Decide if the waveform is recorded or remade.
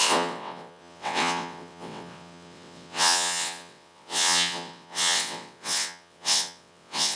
remade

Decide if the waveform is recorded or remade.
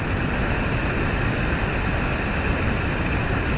recorded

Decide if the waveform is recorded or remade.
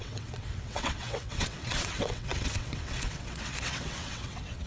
remade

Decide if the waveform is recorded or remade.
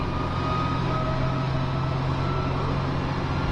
recorded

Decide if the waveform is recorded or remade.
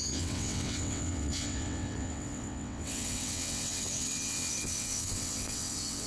remade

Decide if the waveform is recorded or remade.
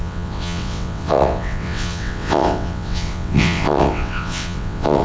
remade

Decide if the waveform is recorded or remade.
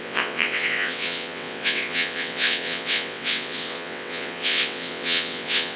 remade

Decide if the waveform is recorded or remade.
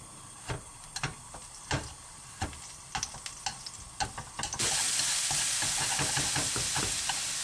recorded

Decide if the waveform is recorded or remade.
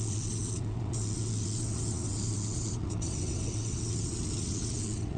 remade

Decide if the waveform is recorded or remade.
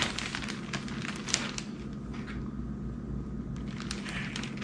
recorded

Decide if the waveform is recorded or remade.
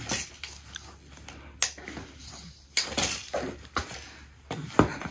recorded